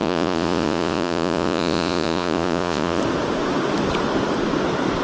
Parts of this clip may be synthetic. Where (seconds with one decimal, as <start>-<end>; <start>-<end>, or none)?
0.0-3.0